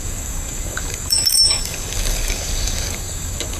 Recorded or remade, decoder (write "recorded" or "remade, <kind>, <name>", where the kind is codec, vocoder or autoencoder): remade, codec, DAC